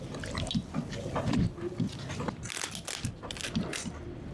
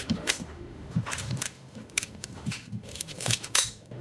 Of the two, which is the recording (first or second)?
first